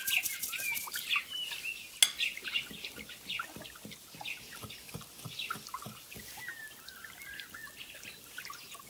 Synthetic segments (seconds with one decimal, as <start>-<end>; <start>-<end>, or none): 0.0-1.6